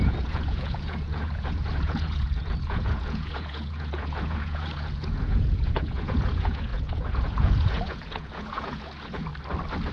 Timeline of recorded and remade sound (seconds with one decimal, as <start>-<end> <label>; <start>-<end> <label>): 0.0-9.3 remade; 9.3-9.9 recorded